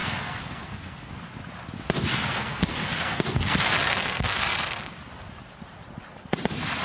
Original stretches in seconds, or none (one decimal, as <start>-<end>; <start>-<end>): 1.1-2.1; 4.8-6.8